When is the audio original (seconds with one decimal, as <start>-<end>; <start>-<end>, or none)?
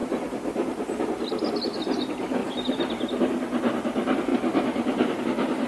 0.0-2.4; 3.2-5.7